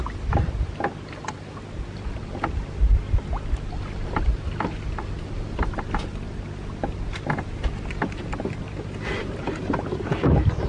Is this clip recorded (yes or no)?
yes